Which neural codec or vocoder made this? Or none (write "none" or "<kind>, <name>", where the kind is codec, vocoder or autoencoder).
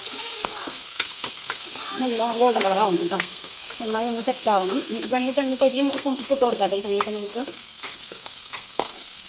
codec, SNAC